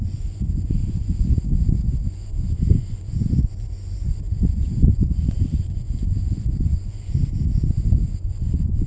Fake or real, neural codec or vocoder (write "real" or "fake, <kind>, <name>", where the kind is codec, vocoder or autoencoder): fake, vocoder, Vocos